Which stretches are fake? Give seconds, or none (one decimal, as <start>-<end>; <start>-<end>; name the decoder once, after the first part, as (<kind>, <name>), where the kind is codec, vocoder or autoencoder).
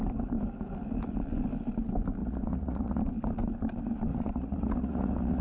2.2-3.0 (vocoder, Vocos); 4.1-5.4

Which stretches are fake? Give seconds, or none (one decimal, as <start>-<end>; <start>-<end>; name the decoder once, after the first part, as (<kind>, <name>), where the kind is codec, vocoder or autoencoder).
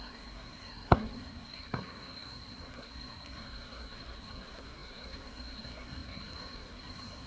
0.0-7.3 (codec, SNAC)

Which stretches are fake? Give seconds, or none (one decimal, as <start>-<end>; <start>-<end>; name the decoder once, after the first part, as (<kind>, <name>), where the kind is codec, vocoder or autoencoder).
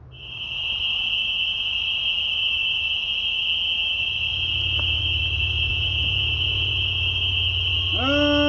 4.3-5.0 (vocoder, Vocos); 5.7-6.7